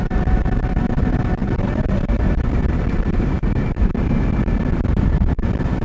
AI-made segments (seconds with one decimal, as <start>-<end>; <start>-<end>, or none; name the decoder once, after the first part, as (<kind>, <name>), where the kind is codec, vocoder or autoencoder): 0.0-5.8 (vocoder, BigVGAN v2)